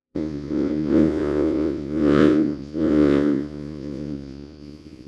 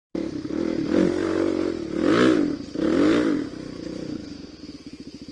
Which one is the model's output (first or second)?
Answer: first